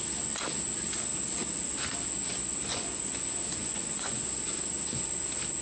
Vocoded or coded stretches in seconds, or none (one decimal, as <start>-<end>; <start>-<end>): 2.7-3.2; 3.6-4.3